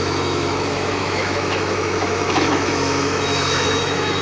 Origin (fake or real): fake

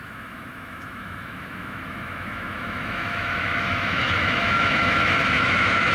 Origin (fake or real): fake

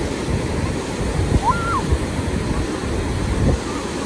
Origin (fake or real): real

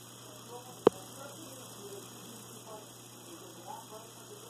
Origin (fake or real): real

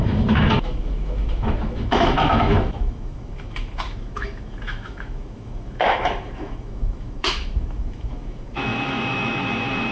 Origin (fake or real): fake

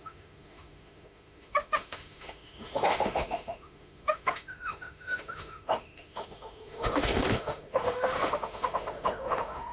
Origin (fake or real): fake